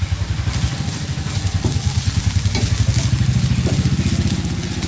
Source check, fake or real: real